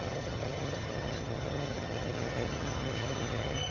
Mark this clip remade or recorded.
remade